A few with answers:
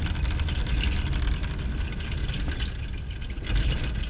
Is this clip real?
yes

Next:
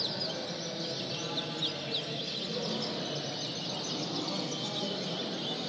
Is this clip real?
yes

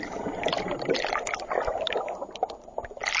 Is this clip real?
yes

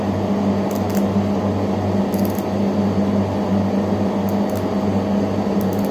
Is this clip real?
yes